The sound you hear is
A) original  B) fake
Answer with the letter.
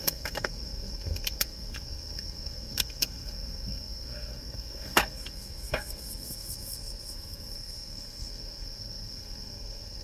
B